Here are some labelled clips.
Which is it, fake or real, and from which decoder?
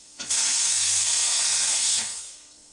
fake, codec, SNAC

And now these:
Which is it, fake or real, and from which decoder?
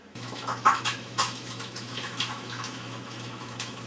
fake, autoencoder, DAC-VAE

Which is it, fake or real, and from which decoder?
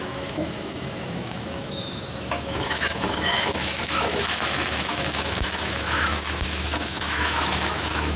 fake, autoencoder, DAC-VAE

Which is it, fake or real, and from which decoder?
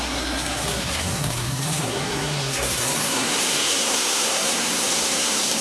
fake, codec, SNAC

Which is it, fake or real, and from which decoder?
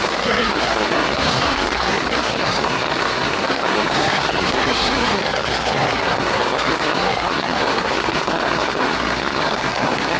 fake, codec, SNAC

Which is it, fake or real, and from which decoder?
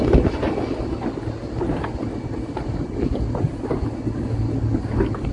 real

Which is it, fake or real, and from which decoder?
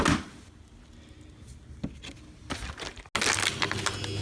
real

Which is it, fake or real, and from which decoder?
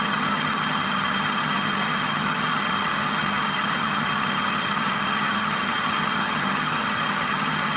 fake, vocoder, HiFi-GAN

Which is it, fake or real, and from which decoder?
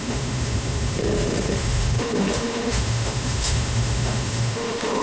fake, autoencoder, DAC-VAE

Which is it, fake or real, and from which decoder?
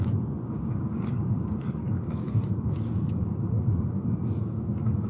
fake, codec, DAC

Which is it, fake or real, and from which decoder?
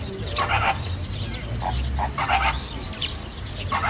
real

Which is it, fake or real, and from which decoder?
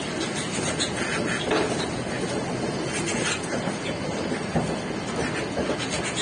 real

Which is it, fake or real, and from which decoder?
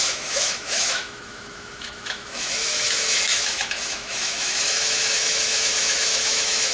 fake, autoencoder, DAC-VAE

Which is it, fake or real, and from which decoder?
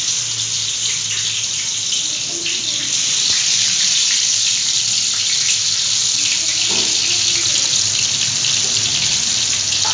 real